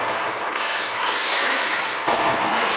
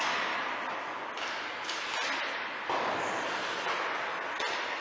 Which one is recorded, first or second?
second